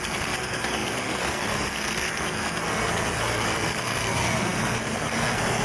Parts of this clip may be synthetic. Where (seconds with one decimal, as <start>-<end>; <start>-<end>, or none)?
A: 0.0-5.6

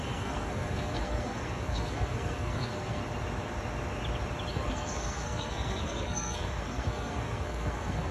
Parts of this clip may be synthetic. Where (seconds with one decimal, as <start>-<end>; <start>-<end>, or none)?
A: 0.0-3.0; 4.5-8.1